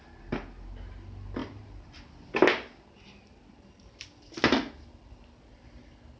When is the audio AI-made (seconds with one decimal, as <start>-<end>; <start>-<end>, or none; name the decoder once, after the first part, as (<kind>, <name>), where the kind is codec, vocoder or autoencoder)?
none